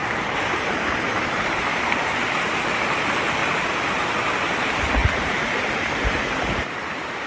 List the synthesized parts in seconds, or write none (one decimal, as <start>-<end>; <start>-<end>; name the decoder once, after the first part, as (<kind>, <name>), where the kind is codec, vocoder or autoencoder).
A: 0.0-0.7 (vocoder, BigVGAN v2); 1.7-2.2; 3.4-4.1; 5.0-6.4